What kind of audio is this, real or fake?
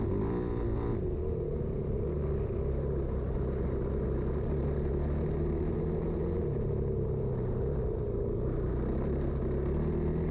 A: real